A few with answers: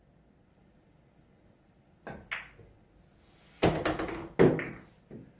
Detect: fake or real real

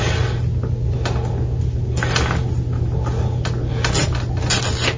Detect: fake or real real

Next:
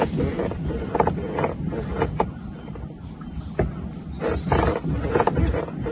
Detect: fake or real real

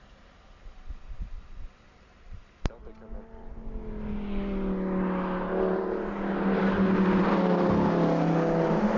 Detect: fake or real real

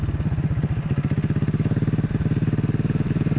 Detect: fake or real real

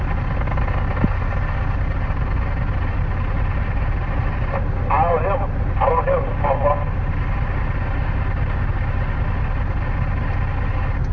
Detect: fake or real real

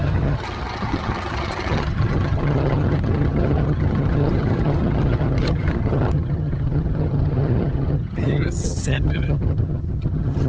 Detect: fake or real fake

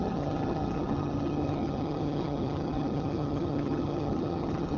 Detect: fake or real fake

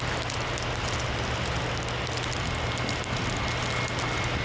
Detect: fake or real real